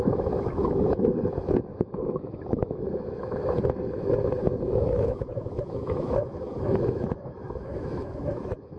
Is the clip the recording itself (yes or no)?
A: no